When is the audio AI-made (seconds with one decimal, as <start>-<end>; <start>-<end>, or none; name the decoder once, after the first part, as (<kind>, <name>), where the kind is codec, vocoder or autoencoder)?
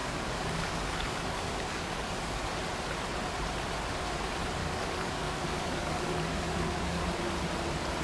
0.0-2.5 (codec, DAC); 4.6-7.0